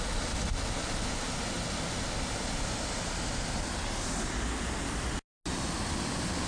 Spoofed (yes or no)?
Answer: no